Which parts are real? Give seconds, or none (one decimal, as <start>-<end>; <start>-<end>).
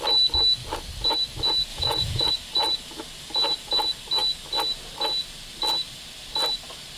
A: 0.0-1.7; 2.3-7.0